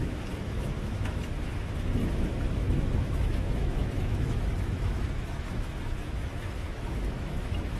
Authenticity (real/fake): fake